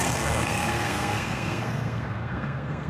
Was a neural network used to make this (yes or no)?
yes